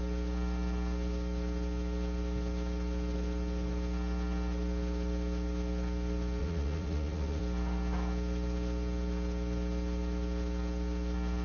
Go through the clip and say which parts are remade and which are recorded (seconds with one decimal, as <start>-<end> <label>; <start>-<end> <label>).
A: 0.0-6.4 recorded; 6.4-7.4 remade; 7.4-11.4 recorded